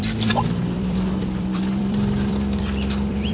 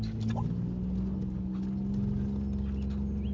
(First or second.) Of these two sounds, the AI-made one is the first